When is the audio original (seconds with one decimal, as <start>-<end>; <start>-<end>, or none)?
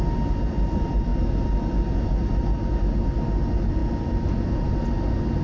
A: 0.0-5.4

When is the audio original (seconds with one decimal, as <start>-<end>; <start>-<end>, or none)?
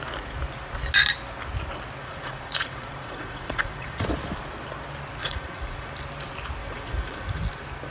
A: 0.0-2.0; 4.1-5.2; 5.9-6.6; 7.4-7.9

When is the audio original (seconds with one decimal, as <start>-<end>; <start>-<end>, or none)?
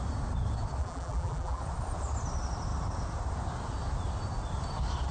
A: 0.0-0.8; 1.6-5.1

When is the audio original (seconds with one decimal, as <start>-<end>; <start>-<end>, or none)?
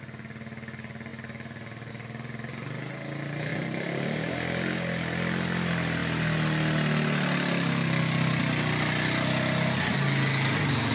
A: 0.0-3.5; 4.3-10.9